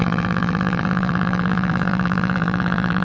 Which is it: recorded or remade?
remade